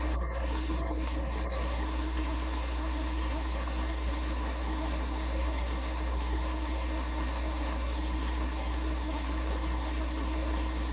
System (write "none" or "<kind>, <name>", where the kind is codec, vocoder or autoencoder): codec, SNAC